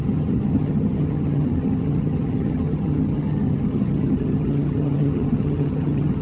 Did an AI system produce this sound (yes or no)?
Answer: yes